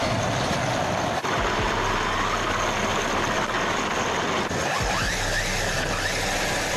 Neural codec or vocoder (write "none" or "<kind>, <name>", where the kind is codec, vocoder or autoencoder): none